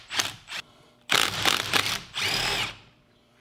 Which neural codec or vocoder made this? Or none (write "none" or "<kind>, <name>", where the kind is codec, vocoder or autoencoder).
vocoder, BigVGAN v2